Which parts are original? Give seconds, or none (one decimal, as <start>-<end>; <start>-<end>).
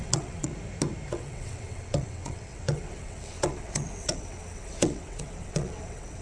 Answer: 0.5-1.1